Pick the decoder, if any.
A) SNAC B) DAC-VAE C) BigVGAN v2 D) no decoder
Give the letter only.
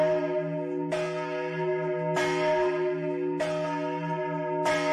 D